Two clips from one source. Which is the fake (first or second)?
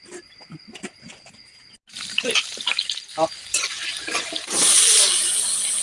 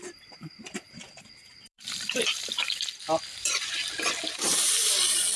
second